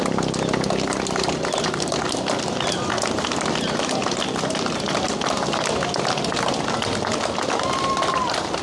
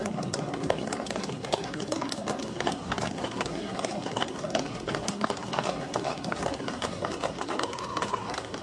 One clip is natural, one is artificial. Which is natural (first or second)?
first